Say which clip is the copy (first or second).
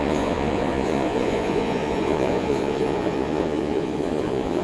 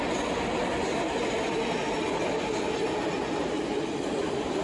first